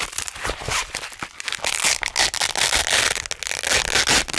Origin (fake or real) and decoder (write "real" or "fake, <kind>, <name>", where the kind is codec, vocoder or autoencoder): real